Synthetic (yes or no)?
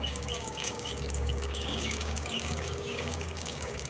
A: yes